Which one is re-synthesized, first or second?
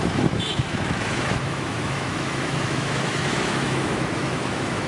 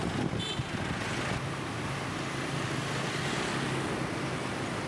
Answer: first